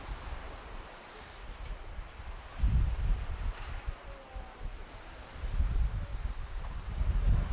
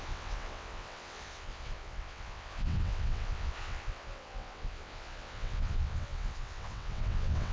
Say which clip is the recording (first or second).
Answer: first